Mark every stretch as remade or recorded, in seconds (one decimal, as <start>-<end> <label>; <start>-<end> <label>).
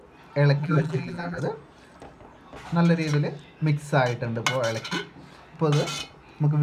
0.0-0.6 recorded; 0.6-1.4 remade; 1.4-6.6 recorded